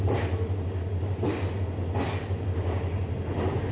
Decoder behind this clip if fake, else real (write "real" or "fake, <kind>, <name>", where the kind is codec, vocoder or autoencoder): real